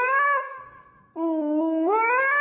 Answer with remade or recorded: recorded